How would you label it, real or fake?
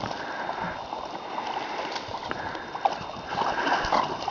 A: real